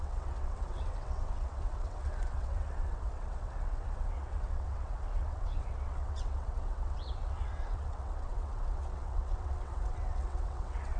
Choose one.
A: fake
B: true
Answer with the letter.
A